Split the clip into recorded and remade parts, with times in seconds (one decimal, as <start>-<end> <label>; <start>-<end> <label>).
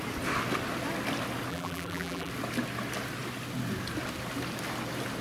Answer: 0.0-1.5 recorded; 1.5-2.3 remade; 2.3-5.2 recorded